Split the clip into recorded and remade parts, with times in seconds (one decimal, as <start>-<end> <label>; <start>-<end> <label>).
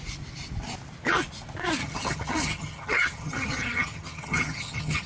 0.0-1.8 recorded; 1.8-5.1 remade